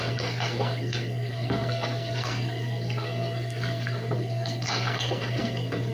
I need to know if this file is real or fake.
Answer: fake